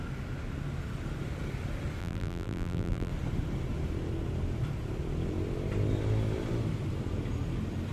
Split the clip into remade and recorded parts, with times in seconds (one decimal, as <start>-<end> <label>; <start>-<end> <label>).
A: 0.0-2.0 recorded; 2.0-3.1 remade; 3.1-7.9 recorded